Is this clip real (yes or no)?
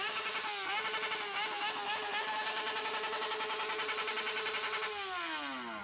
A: yes